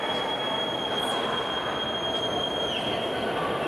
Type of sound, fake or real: real